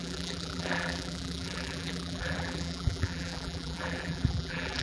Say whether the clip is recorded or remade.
remade